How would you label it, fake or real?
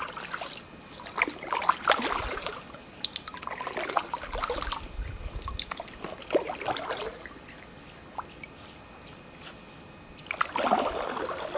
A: real